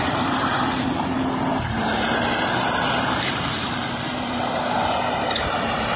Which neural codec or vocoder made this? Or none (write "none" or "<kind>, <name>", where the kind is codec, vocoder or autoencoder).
vocoder, BigVGAN v2